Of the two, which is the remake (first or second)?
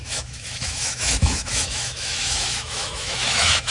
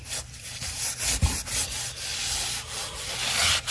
first